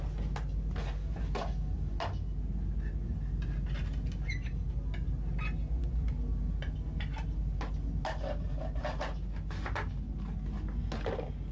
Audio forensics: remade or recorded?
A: recorded